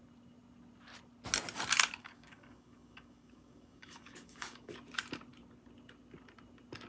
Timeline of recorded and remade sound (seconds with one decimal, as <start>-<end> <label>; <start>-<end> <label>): 0.0-2.0 recorded; 2.0-4.7 remade; 4.7-6.9 recorded